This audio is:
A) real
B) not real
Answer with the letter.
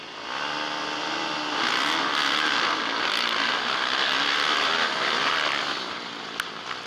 A